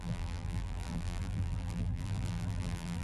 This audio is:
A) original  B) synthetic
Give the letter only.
B